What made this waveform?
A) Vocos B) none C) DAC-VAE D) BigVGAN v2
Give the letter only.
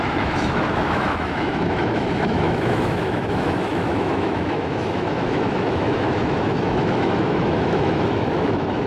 C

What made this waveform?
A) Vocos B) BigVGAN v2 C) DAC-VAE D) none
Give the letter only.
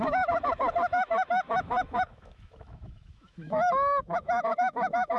C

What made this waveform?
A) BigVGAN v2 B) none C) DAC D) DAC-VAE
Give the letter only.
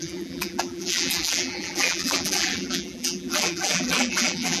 A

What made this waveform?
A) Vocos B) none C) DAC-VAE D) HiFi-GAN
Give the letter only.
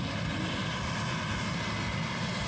B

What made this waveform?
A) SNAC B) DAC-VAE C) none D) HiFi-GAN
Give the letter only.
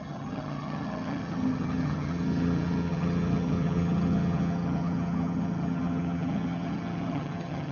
D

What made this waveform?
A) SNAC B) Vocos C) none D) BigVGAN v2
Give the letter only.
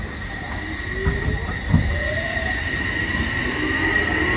C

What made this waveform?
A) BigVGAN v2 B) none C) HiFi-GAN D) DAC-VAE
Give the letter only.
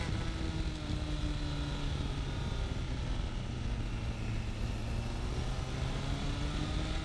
B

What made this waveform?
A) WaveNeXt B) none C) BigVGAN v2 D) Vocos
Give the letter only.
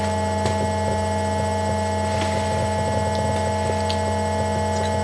B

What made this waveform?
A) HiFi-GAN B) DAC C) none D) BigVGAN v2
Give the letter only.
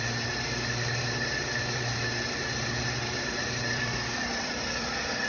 D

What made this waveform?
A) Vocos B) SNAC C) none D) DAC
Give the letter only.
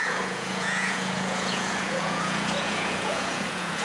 A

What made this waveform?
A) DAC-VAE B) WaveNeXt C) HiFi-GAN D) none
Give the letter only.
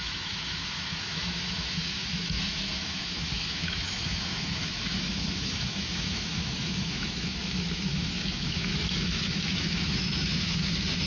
A